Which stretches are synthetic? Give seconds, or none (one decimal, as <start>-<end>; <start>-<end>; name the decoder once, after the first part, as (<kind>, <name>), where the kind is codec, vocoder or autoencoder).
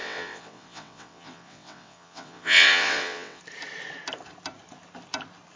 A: 0.0-3.4 (vocoder, WaveNeXt)